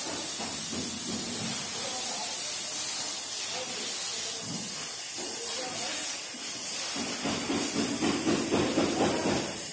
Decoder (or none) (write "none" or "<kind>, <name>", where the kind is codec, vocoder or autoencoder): none